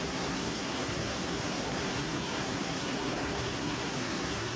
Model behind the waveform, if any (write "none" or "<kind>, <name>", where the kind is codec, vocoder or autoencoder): codec, SNAC